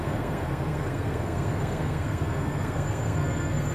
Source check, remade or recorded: remade